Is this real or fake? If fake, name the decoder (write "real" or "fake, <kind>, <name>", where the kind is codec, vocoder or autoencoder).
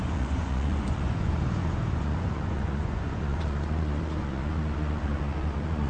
fake, vocoder, Vocos